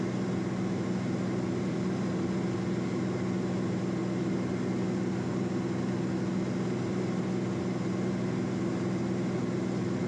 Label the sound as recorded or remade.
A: recorded